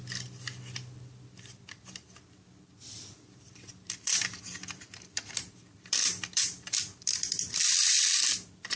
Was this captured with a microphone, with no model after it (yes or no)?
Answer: no